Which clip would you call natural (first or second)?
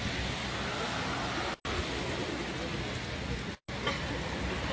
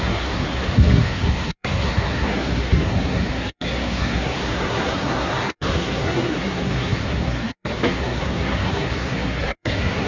first